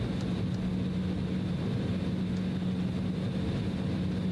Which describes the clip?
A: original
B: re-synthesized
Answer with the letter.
A